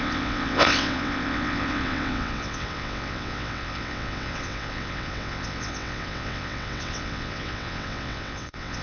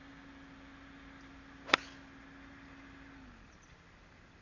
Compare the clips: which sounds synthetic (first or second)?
first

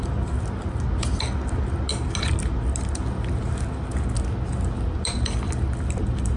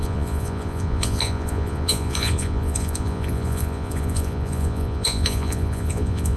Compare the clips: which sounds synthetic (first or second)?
second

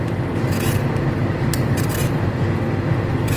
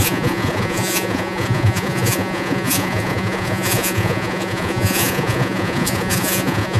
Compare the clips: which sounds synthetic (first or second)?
second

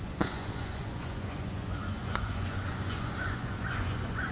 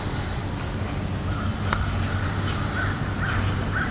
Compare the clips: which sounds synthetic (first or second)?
first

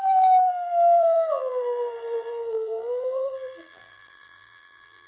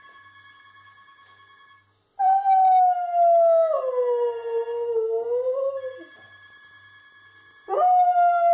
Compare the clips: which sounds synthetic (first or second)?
first